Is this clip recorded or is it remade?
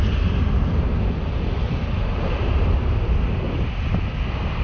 recorded